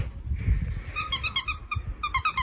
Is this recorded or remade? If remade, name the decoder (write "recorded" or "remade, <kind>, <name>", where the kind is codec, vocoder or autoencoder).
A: recorded